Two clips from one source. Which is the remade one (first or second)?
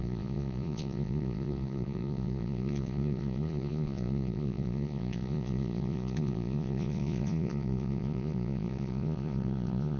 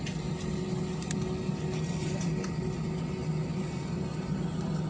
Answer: first